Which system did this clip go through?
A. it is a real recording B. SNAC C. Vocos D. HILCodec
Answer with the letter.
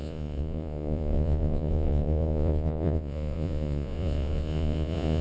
C